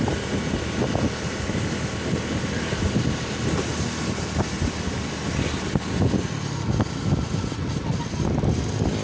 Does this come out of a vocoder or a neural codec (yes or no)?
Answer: no